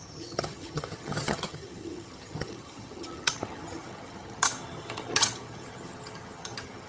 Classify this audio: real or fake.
fake